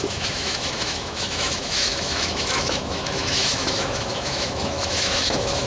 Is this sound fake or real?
fake